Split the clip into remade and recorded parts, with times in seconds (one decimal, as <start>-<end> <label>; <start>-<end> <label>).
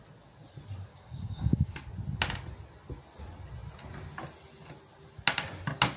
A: 0.0-0.9 recorded; 0.9-1.7 remade; 1.7-6.0 recorded